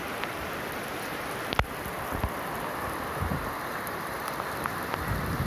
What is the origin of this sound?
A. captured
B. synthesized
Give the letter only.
B